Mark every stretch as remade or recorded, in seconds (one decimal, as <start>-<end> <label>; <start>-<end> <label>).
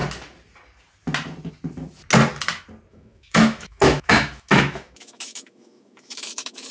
0.0-2.9 recorded; 2.9-6.7 remade